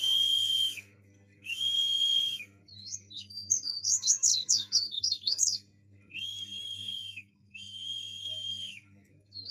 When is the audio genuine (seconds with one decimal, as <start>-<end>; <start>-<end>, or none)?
none